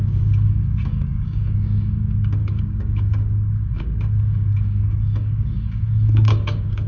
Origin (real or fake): fake